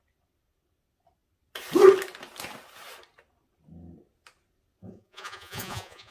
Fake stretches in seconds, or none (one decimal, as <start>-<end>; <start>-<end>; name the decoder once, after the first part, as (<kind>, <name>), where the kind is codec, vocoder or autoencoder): 4.8-6.1 (vocoder, Vocos)